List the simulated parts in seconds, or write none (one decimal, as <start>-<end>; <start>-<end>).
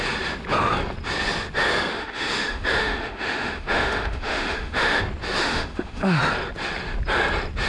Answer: 1.9-5.0; 5.4-6.2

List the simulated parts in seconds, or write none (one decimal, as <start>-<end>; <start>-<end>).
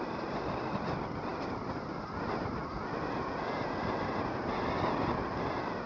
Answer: none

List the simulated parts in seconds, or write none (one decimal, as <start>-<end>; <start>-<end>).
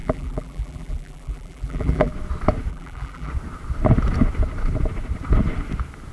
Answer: 0.0-2.1; 2.7-3.3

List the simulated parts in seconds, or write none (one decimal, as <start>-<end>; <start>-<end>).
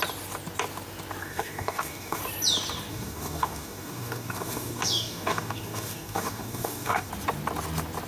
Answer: 1.2-2.2; 2.9-7.1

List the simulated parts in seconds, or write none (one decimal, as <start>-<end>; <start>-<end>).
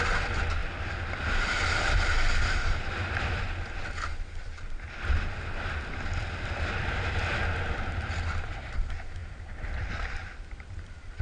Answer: none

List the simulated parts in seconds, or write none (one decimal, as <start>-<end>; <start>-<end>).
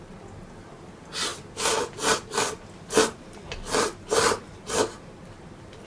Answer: none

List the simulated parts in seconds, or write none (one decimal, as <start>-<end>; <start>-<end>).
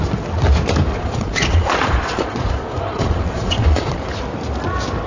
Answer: 0.9-4.0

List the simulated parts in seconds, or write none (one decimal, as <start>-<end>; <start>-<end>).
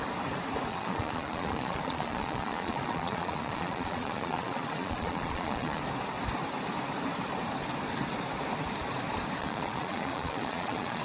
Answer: 0.7-5.8; 9.4-11.0